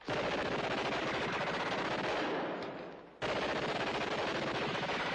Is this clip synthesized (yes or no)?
no